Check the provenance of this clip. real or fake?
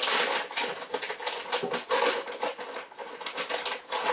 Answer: real